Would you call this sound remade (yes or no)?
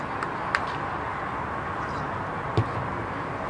no